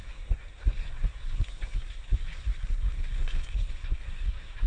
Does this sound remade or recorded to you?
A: remade